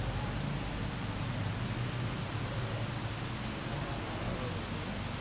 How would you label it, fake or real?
real